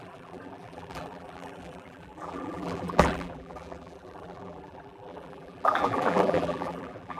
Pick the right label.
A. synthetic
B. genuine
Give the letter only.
A